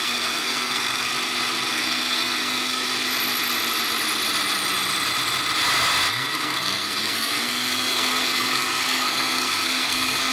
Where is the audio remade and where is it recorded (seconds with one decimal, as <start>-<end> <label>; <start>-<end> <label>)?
0.0-1.1 remade; 1.1-1.7 recorded; 1.7-2.9 remade; 2.9-6.1 recorded; 6.1-10.3 remade